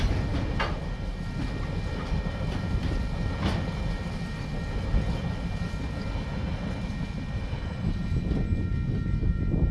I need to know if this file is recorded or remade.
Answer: recorded